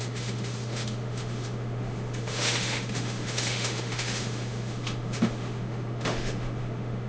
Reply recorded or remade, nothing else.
remade